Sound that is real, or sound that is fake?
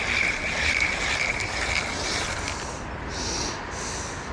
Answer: real